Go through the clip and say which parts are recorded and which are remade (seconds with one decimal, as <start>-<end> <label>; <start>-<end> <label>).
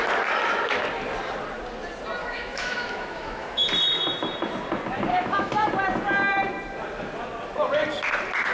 0.0-2.2 recorded; 2.2-3.7 remade; 3.7-5.1 recorded; 5.1-5.7 remade; 5.7-8.5 recorded